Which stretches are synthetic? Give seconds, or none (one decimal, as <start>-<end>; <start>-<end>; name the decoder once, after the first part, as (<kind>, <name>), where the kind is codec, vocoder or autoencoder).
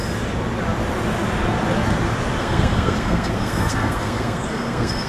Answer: 2.4-5.1 (codec, SNAC)